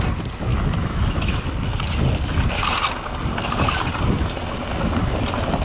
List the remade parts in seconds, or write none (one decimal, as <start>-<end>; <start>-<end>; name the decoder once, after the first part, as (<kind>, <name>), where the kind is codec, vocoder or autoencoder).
0.5-1.4 (autoencoder, DAC-VAE)